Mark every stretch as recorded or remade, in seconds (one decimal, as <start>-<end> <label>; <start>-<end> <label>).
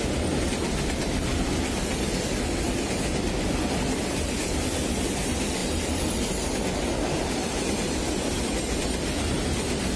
0.0-10.0 recorded